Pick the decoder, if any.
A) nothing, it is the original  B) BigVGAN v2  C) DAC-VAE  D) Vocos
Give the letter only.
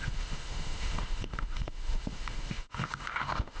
C